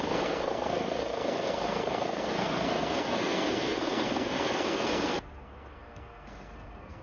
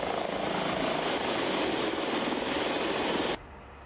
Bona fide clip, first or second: second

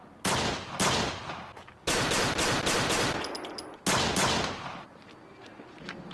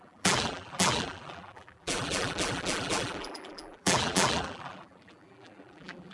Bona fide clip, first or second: first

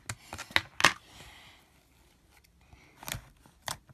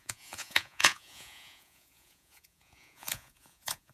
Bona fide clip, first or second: first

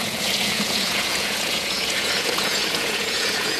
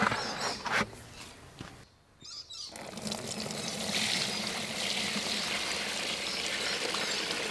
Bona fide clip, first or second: second